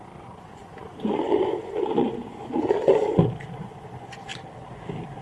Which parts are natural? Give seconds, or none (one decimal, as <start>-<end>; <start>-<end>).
3.1-3.6; 4.3-5.2